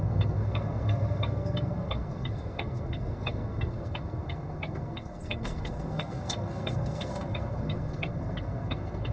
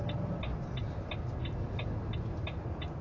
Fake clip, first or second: first